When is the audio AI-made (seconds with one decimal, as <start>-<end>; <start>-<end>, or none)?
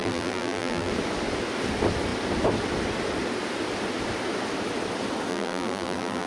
0.0-0.9; 5.3-6.3